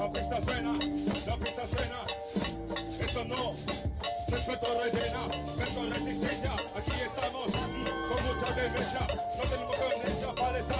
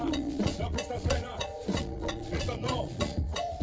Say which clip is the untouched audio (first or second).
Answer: first